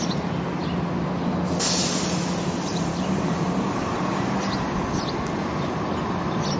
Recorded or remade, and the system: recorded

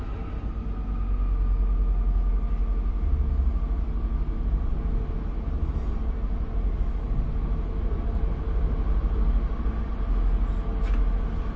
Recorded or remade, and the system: recorded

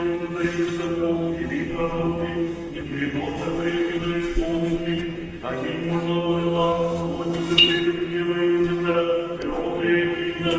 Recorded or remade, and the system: remade, codec, SNAC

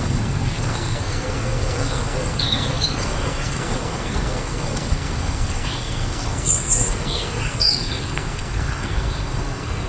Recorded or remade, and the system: remade, codec, SNAC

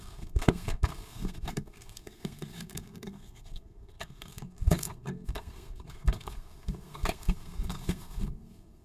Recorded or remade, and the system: remade, codec, SNAC